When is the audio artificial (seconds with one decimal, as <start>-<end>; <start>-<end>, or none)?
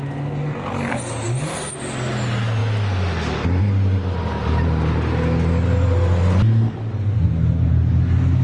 none